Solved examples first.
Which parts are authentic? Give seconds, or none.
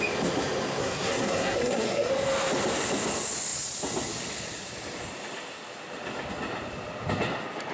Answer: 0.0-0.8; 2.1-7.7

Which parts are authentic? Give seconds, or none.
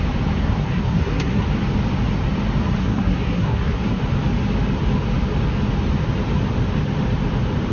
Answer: 0.0-0.4; 1.4-2.8; 4.0-7.7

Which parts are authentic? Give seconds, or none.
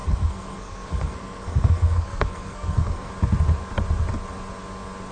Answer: 3.1-5.1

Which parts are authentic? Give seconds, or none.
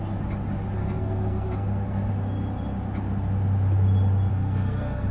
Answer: 0.0-0.8; 2.1-4.3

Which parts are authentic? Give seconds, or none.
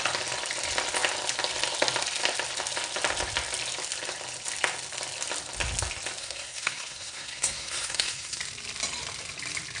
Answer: 0.0-6.2; 8.4-9.8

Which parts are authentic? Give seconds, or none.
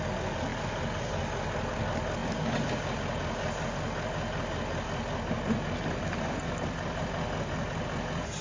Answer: 0.0-8.4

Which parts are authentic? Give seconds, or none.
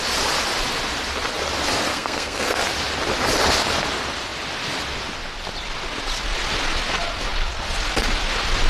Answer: 0.0-1.9; 2.6-8.7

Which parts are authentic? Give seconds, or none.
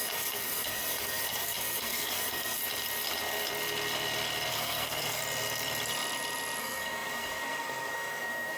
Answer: 2.6-4.5; 5.2-6.6